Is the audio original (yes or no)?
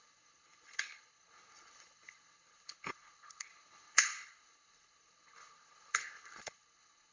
no